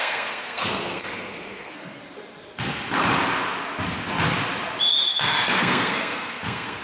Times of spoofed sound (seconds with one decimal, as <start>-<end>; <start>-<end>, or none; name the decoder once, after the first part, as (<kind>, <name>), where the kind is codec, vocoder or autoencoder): 0.0-2.0 (codec, SNAC); 5.1-6.8